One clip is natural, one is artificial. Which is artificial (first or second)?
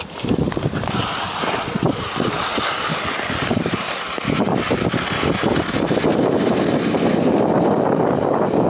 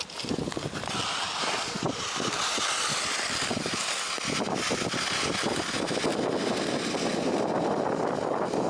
first